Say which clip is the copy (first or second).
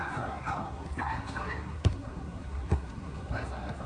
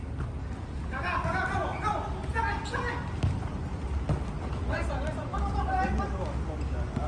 first